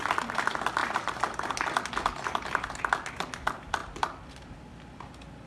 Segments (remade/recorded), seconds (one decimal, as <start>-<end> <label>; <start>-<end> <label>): 0.0-0.8 recorded; 0.8-1.5 remade; 1.5-3.8 recorded; 3.8-4.5 remade; 4.5-5.5 recorded